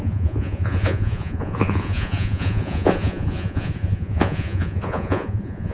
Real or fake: fake